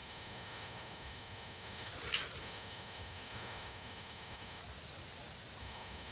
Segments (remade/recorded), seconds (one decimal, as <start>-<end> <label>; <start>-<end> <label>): 0.0-1.9 remade; 1.9-2.4 recorded; 2.4-4.6 remade; 4.6-5.6 recorded; 5.6-6.1 remade